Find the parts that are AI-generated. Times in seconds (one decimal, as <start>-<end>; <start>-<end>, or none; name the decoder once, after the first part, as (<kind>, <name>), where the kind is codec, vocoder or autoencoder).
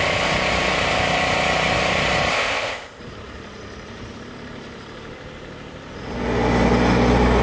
2.3-3.0 (codec, ZipCodec)